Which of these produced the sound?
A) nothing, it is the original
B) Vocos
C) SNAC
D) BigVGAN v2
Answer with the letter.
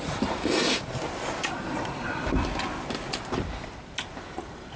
A